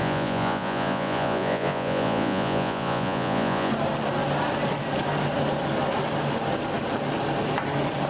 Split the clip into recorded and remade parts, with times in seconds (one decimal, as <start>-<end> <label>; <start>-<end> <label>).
0.0-3.7 remade; 3.7-8.1 recorded